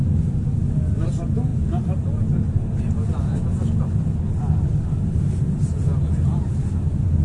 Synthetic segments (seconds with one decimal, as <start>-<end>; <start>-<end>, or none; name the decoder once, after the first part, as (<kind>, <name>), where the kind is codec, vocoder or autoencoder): none